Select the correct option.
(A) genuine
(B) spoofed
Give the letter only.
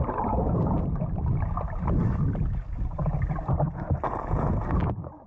A